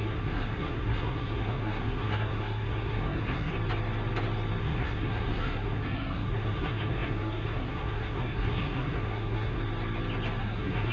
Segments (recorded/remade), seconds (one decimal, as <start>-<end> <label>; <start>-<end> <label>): 0.0-3.5 remade; 3.5-4.6 recorded; 4.6-9.6 remade; 9.6-10.4 recorded; 10.4-10.9 remade